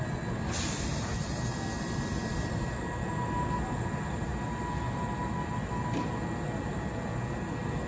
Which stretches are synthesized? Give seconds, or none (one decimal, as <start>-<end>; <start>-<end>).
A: 2.3-2.8